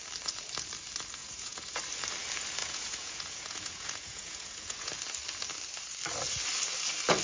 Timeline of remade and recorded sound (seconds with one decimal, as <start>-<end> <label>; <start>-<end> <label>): 0.0-1.2 recorded; 1.2-1.8 remade; 1.8-2.6 recorded; 2.6-4.9 remade; 4.9-7.2 recorded